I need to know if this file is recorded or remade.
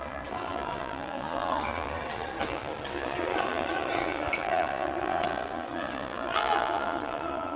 remade